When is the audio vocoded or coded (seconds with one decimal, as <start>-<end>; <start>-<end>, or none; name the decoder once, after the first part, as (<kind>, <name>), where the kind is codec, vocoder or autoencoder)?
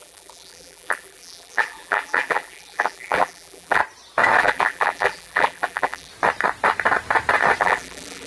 0.0-3.8 (vocoder, BigVGAN v2); 4.4-6.1; 7.6-8.3